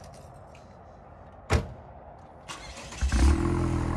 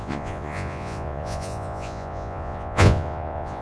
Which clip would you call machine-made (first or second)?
second